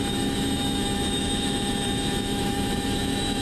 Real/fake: fake